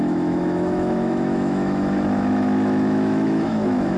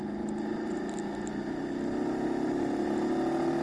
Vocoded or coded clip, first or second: first